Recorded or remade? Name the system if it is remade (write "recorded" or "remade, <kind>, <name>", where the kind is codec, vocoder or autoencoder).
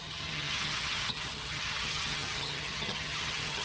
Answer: remade, vocoder, HiFi-GAN